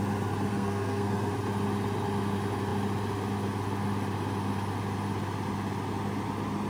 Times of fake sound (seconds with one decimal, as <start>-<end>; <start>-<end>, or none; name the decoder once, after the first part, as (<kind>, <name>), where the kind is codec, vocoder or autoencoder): 0.5-1.3 (codec, SNAC)